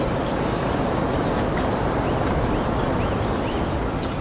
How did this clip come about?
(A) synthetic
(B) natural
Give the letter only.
B